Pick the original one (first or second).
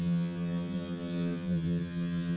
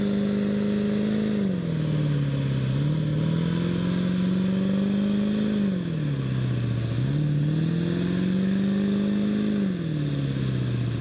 second